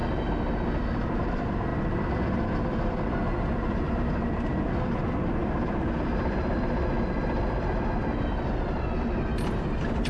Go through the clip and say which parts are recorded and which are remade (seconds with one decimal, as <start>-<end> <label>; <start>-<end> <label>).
0.0-1.1 recorded; 1.1-9.3 remade; 9.3-10.1 recorded